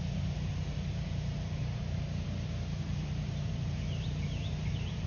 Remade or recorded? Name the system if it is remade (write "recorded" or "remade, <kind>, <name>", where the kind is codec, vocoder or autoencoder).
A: remade, vocoder, BigVGAN v2